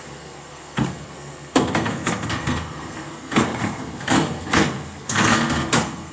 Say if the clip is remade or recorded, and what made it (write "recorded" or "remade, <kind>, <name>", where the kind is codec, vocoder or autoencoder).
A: remade, codec, SNAC